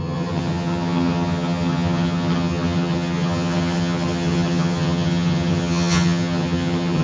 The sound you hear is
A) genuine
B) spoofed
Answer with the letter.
B